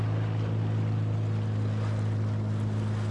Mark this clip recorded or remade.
recorded